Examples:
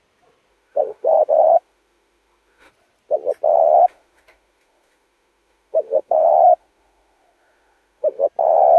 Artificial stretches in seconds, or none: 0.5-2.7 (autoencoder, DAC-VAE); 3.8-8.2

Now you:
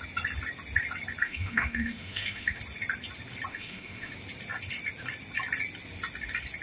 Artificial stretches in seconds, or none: 1.2-2.6 (autoencoder, DAC-VAE); 3.5-4.1

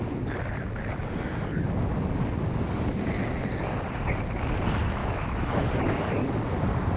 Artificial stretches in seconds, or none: 5.0-5.6 (autoencoder, DAC-VAE)

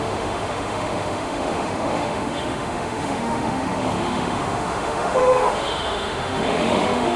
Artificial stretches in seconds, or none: 0.0-7.2 (autoencoder, DAC-VAE)

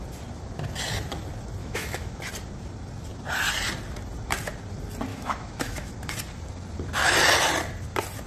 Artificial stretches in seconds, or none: 1.6-2.2 (autoencoder, DAC-VAE); 5.1-5.9